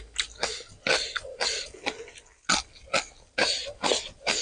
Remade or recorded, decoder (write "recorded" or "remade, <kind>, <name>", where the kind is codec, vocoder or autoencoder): recorded